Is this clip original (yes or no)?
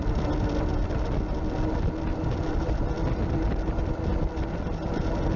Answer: yes